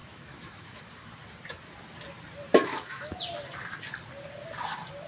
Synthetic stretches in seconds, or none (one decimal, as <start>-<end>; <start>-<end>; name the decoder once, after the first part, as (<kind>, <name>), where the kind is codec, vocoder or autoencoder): 0.0-0.8 (autoencoder, DAC-VAE); 2.6-3.2